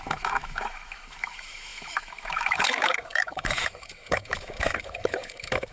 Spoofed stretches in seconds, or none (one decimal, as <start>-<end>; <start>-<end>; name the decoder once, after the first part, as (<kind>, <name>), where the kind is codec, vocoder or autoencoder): 0.0-5.7 (autoencoder, DAC-VAE)